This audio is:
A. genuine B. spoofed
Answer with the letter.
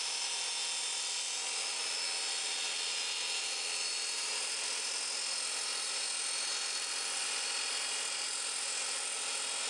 A